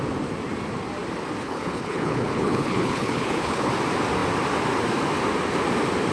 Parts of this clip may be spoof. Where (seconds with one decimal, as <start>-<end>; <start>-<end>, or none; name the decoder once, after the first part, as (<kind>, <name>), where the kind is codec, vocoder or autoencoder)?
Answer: 1.4-3.7 (codec, HILCodec)